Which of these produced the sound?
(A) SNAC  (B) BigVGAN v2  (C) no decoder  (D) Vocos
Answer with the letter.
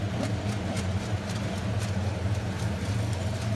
C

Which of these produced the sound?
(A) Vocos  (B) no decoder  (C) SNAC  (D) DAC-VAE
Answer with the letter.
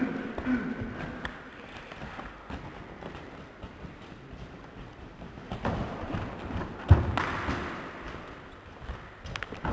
B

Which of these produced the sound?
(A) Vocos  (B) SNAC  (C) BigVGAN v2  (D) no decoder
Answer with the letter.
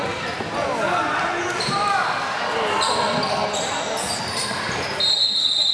D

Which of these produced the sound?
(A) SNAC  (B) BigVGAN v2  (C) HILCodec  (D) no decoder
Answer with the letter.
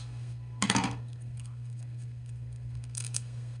A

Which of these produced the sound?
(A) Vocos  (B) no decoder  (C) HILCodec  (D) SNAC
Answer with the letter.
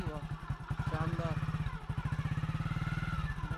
B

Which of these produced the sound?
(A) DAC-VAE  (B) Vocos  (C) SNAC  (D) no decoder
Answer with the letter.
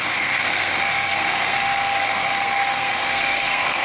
C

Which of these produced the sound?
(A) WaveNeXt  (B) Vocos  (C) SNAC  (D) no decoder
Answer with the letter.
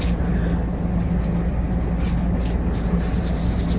D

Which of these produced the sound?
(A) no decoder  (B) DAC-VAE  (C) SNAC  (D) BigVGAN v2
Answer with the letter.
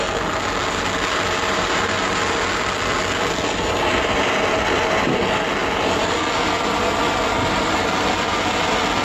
A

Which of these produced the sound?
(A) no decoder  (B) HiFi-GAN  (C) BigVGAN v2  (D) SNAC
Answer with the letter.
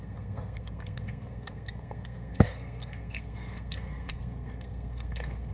D